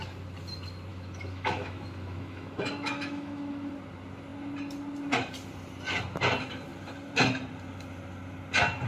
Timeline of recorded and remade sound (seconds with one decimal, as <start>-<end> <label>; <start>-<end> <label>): 0.0-0.9 recorded; 0.9-3.7 remade; 3.7-8.9 recorded